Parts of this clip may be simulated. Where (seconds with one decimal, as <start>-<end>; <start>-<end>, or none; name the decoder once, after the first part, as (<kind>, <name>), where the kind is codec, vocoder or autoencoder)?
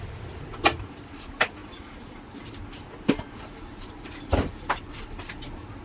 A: none